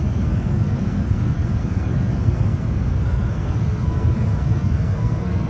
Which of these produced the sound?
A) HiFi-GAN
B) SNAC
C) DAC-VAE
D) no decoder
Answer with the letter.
B